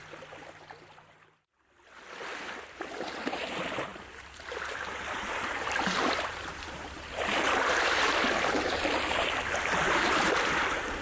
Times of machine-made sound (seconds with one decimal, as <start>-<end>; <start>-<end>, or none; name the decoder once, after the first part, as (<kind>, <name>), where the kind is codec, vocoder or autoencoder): 0.0-11.0 (vocoder, BigVGAN v2)